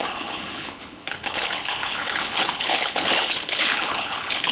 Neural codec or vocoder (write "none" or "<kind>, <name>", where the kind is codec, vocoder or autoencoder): codec, HILCodec